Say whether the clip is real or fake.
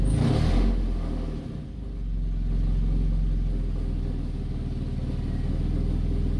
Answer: real